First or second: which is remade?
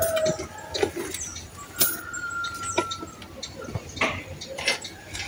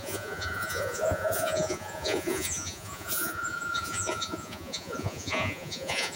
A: second